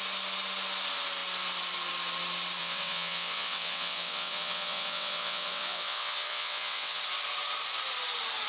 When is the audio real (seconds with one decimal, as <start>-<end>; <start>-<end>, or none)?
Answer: 0.0-2.6; 7.0-8.5